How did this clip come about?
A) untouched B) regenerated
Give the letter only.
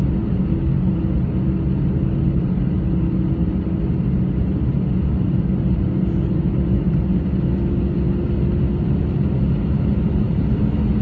A